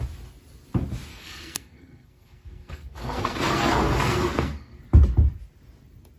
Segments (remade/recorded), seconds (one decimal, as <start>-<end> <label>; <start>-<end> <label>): 0.0-1.1 recorded; 1.1-4.8 remade; 4.8-6.2 recorded